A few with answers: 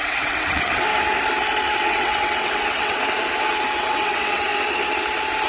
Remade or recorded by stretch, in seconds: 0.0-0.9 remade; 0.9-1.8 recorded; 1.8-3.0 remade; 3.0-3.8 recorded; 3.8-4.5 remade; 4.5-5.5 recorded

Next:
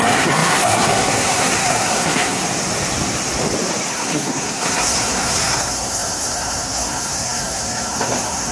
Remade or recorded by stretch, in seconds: 0.0-2.4 remade; 2.4-3.9 recorded; 3.9-8.5 remade